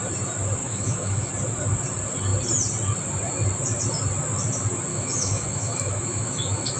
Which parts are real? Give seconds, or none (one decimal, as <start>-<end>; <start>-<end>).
0.0-0.6; 1.3-4.9